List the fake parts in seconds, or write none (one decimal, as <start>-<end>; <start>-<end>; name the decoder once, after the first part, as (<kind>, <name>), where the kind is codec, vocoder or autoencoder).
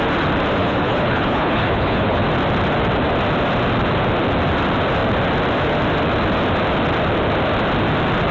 0.6-2.2 (codec, HILCodec)